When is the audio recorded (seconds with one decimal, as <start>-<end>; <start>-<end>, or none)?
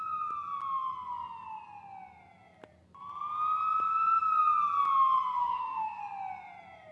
0.0-5.4; 6.0-6.9